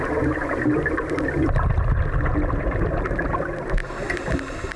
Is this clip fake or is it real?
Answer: real